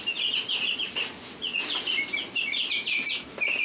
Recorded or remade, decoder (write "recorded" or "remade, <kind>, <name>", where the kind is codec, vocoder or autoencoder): recorded